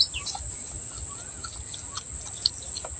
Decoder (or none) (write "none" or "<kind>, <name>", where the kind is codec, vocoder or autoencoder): none